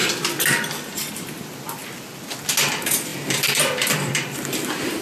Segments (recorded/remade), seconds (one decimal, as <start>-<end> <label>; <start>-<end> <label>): 0.0-3.1 recorded; 3.1-5.0 remade